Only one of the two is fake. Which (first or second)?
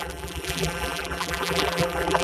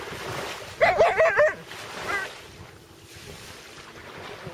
first